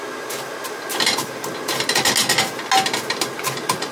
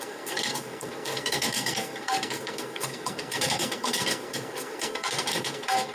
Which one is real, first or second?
first